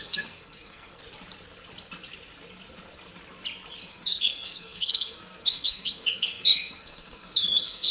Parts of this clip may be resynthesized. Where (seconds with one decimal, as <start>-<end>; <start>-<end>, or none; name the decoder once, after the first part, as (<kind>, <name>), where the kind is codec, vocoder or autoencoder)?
0.0-1.0 (codec, SNAC); 3.9-7.9